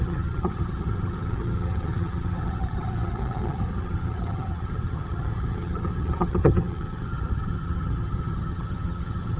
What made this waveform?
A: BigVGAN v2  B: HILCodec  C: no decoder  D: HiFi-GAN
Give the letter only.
D